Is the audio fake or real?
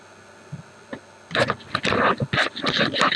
real